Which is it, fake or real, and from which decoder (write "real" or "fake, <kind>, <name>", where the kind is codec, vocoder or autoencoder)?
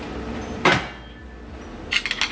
real